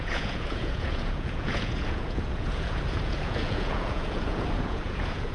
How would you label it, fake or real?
fake